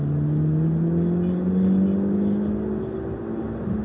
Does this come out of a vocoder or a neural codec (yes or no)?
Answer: no